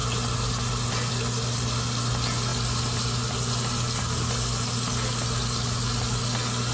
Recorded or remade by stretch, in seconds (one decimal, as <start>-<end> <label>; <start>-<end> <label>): 0.0-6.7 recorded